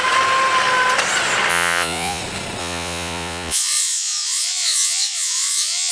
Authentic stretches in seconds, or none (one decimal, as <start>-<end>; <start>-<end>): 0.0-1.5; 2.2-2.6